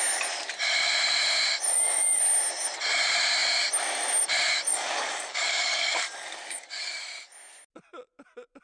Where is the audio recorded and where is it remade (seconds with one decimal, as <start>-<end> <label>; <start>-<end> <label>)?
0.0-1.7 recorded; 1.7-2.2 remade; 2.2-4.7 recorded; 4.7-7.0 remade; 7.0-8.6 recorded